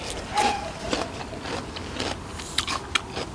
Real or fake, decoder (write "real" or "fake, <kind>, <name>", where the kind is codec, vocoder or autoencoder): real